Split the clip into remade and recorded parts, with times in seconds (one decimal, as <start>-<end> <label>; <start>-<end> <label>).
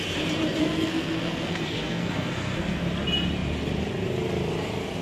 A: 0.0-0.6 recorded; 0.6-2.8 remade; 2.8-5.0 recorded